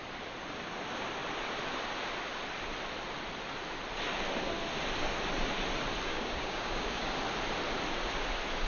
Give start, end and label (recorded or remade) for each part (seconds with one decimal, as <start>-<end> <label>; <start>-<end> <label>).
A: 0.0-6.1 recorded; 6.1-7.1 remade; 7.1-8.7 recorded